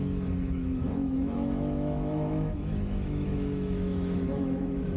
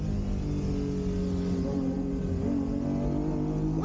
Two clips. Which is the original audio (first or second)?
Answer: second